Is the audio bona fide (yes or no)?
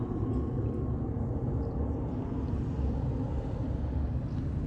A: yes